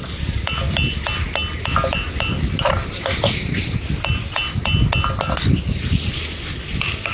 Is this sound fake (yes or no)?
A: no